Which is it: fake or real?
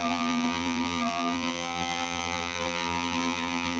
fake